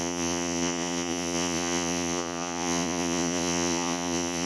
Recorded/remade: remade